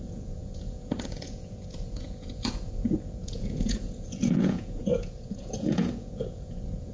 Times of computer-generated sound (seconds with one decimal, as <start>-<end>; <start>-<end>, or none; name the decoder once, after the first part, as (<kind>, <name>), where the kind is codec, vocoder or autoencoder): 0.0-6.9 (vocoder, Vocos)